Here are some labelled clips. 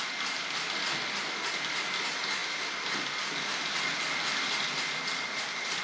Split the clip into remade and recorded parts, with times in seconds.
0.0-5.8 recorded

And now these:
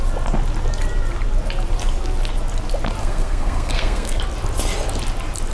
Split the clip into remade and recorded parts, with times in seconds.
0.0-3.0 recorded; 3.0-4.2 remade; 4.2-5.5 recorded

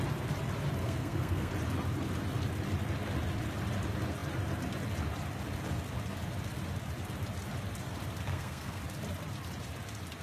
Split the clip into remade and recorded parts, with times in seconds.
0.0-0.8 recorded; 0.8-1.5 remade; 1.5-8.3 recorded; 8.3-8.8 remade; 8.8-10.2 recorded

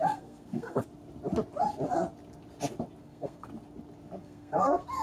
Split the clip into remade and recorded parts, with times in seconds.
0.0-0.8 remade; 0.8-3.0 recorded; 3.0-3.5 remade; 3.5-4.2 recorded; 4.2-5.0 remade

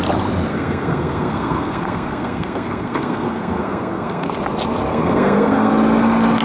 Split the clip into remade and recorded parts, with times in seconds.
0.0-0.5 recorded; 0.5-4.3 remade; 4.3-4.9 recorded; 4.9-5.7 remade; 5.7-6.4 recorded